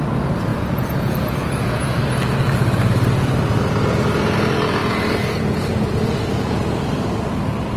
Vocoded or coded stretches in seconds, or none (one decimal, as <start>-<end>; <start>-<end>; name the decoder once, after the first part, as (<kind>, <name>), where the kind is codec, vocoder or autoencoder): 0.5-2.0 (vocoder, Vocos); 4.8-6.7